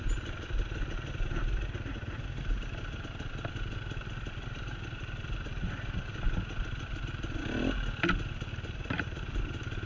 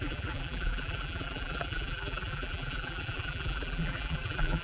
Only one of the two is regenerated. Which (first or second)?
second